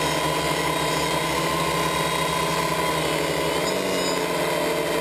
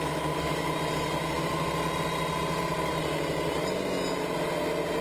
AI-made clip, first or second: second